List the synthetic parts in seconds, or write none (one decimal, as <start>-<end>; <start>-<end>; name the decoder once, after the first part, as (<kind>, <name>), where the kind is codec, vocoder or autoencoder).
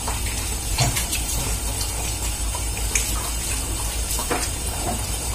0.7-1.4 (vocoder, BigVGAN v2); 4.2-5.3